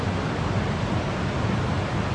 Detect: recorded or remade recorded